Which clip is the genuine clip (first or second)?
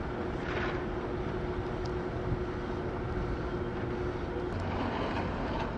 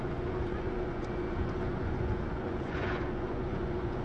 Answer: first